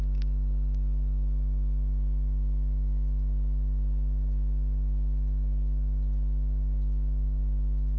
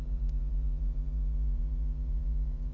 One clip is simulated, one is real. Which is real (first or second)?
first